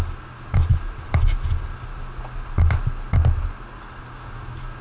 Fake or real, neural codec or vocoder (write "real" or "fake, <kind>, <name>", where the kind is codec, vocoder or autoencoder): real